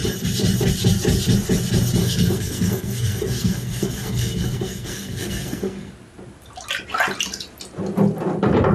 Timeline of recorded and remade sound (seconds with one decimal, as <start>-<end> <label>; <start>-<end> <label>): 0.0-2.0 recorded; 2.0-5.9 remade; 5.9-8.7 recorded